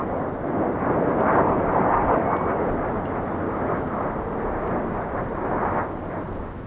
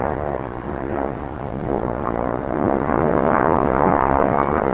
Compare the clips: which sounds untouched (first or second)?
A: first